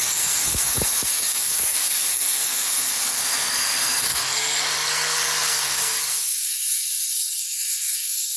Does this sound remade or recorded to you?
remade